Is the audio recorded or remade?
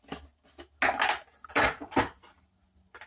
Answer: recorded